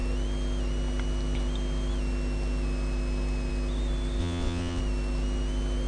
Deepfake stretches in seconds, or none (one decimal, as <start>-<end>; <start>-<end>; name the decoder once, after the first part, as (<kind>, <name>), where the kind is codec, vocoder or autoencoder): 4.2-4.8 (vocoder, WaveNeXt)